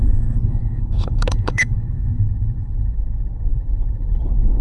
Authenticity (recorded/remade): remade